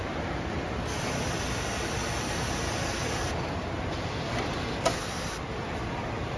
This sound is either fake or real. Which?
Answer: real